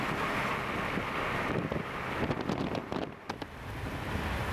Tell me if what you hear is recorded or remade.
recorded